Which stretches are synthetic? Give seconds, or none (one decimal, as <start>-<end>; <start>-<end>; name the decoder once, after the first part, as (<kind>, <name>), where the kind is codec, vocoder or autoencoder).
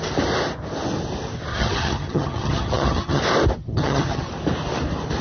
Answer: 1.5-3.2 (vocoder, HiFi-GAN); 3.6-4.3